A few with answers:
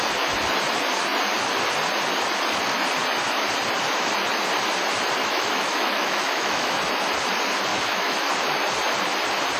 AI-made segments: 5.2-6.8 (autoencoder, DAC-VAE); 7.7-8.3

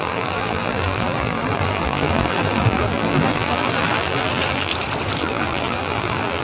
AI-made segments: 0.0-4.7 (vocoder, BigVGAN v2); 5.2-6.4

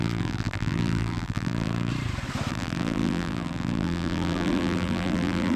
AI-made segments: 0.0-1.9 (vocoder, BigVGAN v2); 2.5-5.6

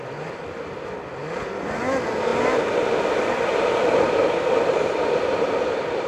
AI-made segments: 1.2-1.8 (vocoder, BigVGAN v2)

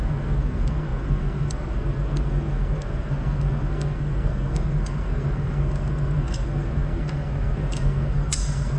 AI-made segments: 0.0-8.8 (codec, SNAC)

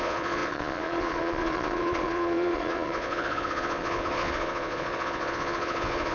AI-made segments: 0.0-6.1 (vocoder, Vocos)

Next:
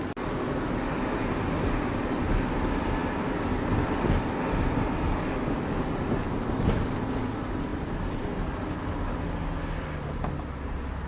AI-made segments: none

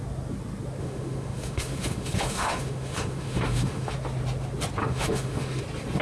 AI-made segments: 0.8-3.9 (autoencoder, DAC-VAE); 4.8-5.6